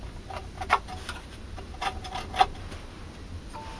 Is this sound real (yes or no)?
yes